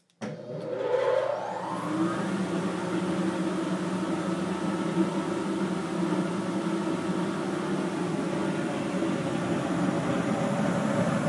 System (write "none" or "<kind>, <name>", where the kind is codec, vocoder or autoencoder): none